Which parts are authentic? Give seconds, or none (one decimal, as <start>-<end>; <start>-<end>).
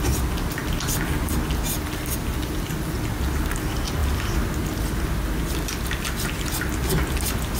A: 0.0-7.6